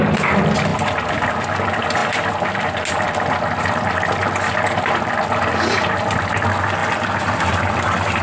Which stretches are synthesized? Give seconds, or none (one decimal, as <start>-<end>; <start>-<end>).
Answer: 0.7-1.3; 6.8-7.7